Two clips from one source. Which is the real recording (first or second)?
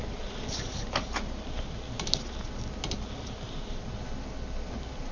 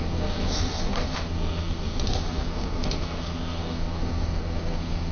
first